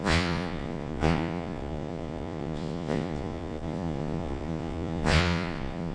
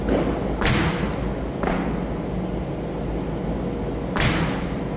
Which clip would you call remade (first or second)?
first